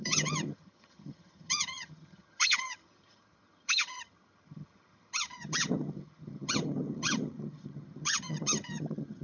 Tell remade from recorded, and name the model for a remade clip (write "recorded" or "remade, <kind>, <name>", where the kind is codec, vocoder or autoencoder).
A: remade, vocoder, HiFi-GAN